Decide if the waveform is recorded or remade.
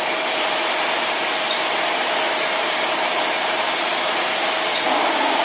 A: remade